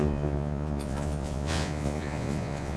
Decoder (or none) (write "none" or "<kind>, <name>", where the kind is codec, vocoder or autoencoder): vocoder, Vocos